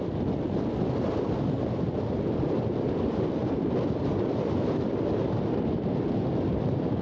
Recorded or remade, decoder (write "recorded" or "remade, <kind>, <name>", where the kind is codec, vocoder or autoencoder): recorded